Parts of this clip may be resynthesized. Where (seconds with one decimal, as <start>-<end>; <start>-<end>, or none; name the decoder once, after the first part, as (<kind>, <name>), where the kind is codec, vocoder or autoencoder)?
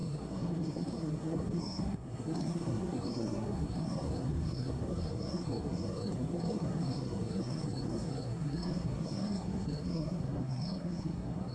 0.0-11.5 (codec, SNAC)